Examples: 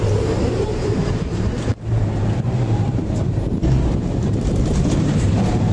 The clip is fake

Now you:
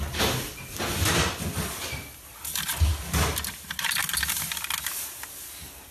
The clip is real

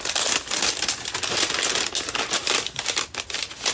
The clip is real